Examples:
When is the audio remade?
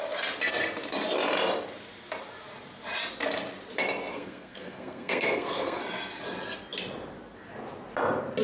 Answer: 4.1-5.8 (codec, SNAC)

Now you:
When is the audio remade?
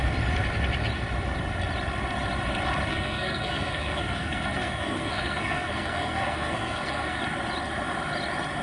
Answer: 2.9-7.2 (codec, SNAC)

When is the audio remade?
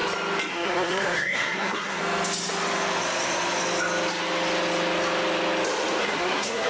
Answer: 0.5-2.0 (codec, SNAC); 6.0-6.7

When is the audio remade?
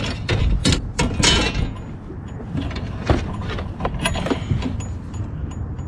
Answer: none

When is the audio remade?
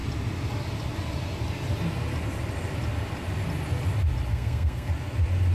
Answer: 4.3-4.9 (codec, SNAC)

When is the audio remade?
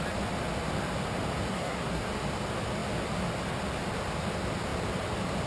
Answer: 1.5-2.0 (codec, SNAC)